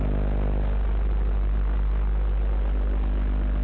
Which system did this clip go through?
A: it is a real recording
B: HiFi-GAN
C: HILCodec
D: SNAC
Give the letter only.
A